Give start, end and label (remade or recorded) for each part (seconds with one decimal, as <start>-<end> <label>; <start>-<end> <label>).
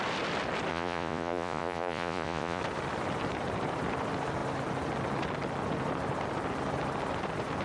0.0-0.7 recorded; 0.7-2.6 remade; 2.6-7.6 recorded